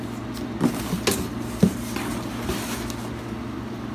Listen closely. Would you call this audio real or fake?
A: real